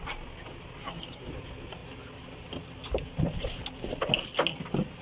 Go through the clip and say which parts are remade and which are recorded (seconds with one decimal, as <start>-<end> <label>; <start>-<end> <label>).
0.0-0.8 recorded; 0.8-1.3 remade; 1.3-5.0 recorded